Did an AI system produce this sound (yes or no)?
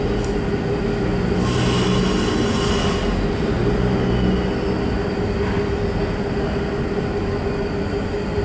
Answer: no